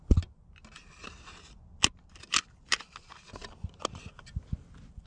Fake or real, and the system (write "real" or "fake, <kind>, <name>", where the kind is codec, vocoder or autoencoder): real